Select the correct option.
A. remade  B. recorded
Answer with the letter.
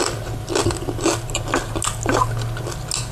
B